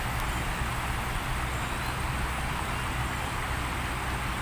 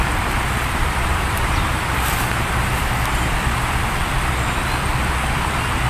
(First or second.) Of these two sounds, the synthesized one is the second